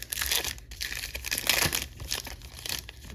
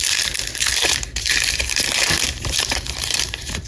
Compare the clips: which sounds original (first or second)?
first